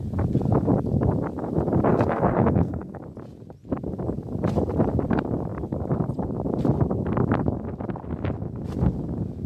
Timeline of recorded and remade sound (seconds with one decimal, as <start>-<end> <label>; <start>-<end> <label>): 0.0-1.9 recorded; 1.9-3.0 remade; 3.0-9.5 recorded